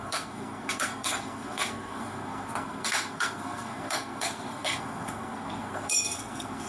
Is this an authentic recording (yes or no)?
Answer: no